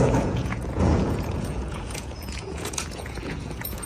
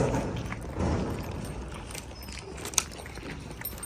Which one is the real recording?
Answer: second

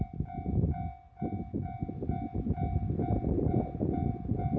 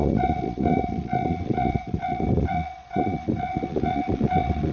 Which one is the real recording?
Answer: first